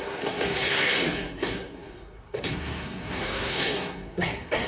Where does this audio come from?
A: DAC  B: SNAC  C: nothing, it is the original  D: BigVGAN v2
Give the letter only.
B